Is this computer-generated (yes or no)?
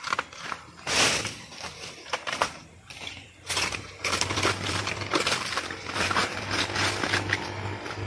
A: yes